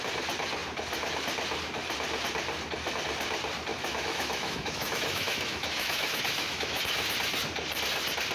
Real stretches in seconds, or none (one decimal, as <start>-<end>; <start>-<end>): 0.0-3.7; 6.8-8.3